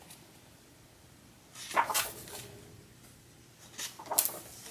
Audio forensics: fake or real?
real